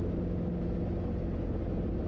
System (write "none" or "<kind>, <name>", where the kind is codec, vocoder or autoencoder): none